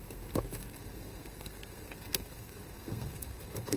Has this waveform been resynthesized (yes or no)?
yes